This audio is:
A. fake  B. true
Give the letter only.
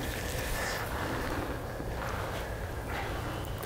B